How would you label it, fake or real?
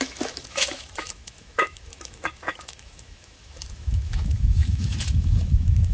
fake